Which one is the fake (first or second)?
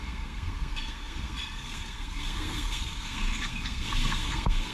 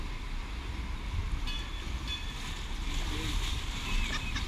first